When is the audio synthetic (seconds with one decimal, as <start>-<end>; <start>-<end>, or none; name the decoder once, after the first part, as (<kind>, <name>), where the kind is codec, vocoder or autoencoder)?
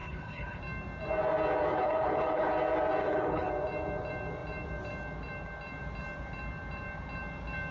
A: 0.0-0.6 (codec, HILCodec); 1.7-2.5; 3.0-3.5